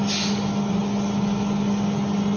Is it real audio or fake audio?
real